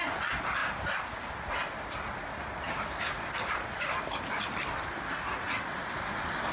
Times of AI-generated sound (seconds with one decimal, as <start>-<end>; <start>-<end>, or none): none